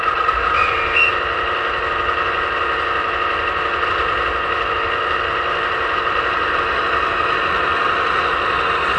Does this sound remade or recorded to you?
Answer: recorded